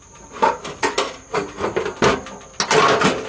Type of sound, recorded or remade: recorded